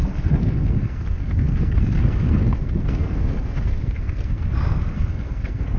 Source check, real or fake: fake